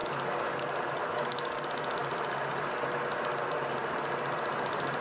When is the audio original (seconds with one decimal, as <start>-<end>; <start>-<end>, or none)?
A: 0.6-1.0; 1.6-5.0